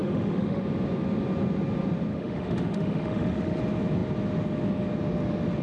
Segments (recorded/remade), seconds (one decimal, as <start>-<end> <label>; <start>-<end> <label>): 0.0-0.6 remade; 0.6-2.1 recorded; 2.1-3.6 remade; 3.6-5.6 recorded